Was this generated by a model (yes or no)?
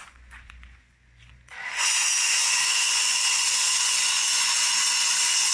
yes